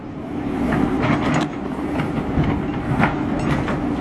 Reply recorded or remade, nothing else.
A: recorded